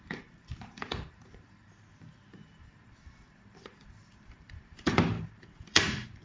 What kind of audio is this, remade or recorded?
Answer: remade